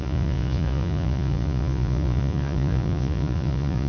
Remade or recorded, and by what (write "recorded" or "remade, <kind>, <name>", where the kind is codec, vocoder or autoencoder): remade, vocoder, Vocos